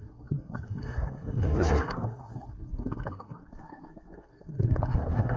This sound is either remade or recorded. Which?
remade